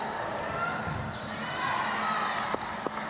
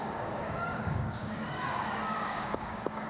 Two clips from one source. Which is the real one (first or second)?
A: first